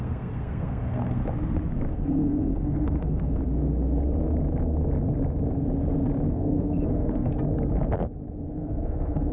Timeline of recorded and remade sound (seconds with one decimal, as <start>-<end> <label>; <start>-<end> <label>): 0.0-1.2 remade; 1.2-1.9 recorded; 1.9-3.4 remade; 3.4-6.3 recorded; 6.3-7.3 remade; 7.3-8.5 recorded; 8.5-9.3 remade